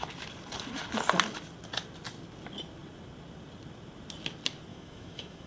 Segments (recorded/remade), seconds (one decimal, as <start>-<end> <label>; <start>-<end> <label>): 0.0-4.7 recorded; 4.7-5.5 remade